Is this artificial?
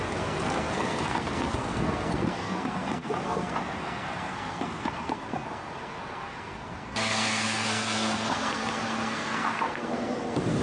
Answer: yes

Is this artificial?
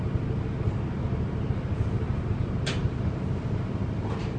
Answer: no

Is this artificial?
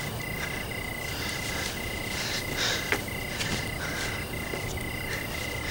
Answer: no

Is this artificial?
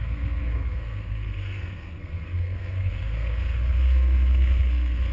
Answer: yes